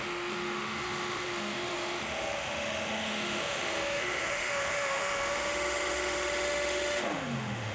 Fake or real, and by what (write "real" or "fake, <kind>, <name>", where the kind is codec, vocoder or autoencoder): fake, autoencoder, DAC-VAE